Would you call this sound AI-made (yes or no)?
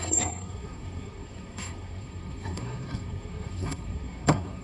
yes